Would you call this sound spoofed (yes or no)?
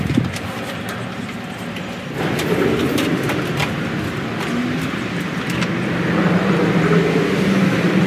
no